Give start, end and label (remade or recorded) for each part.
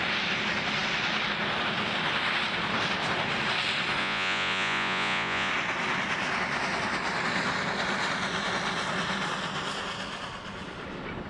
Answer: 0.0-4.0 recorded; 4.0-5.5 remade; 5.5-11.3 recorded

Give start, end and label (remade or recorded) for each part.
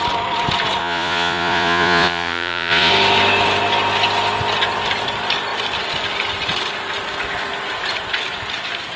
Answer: 0.0-0.8 recorded; 0.8-2.9 remade; 2.9-9.0 recorded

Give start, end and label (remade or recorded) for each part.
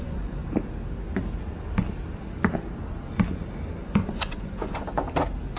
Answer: 0.0-0.4 remade; 0.4-3.8 recorded; 3.8-4.9 remade; 4.9-5.6 recorded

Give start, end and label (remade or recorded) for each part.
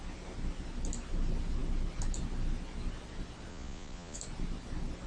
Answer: 0.0-3.5 recorded; 3.5-4.2 remade; 4.2-5.1 recorded